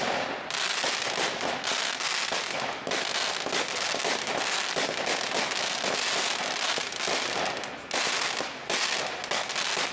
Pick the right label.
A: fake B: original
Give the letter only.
B